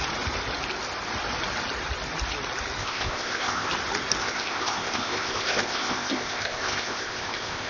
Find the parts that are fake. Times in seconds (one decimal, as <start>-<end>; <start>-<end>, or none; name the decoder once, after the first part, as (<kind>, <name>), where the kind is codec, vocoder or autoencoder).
2.8-3.7 (codec, ZipCodec); 4.2-7.7